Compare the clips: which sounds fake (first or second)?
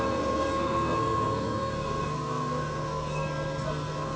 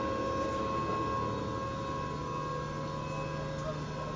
first